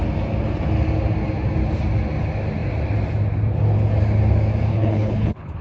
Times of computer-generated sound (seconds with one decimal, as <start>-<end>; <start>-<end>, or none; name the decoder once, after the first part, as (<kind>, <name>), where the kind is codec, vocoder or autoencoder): 4.7-5.6 (codec, HILCodec)